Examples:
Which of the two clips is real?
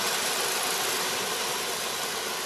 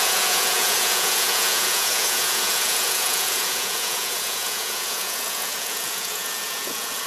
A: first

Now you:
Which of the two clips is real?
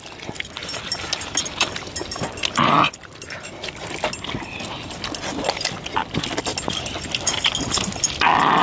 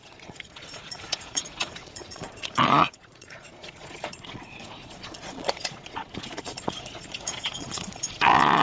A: first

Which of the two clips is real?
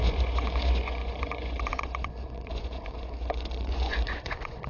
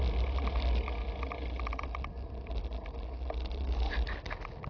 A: second